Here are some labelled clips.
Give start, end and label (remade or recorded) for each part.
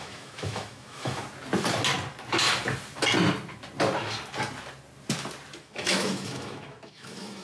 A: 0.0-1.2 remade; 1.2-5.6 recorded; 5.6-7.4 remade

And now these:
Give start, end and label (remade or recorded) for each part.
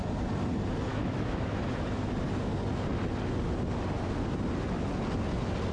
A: 0.0-0.9 recorded; 0.9-2.1 remade; 2.1-5.7 recorded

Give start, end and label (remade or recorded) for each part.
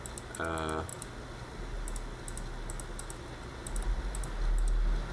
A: 0.0-5.1 recorded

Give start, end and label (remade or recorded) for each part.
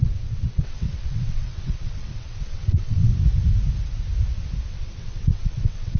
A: 0.0-3.1 remade; 3.1-4.7 recorded; 4.7-6.0 remade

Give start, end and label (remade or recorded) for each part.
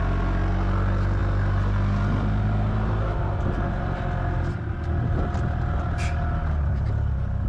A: 0.0-7.5 recorded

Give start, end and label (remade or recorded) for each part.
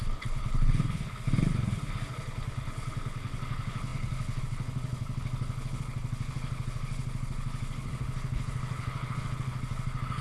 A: 0.0-10.2 remade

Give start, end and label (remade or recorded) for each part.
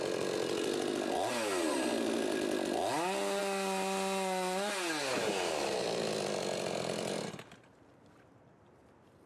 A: 0.0-9.3 recorded